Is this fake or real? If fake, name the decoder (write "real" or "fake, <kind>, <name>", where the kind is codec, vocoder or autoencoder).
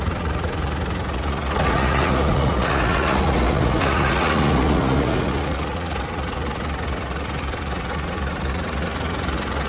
fake, vocoder, Vocos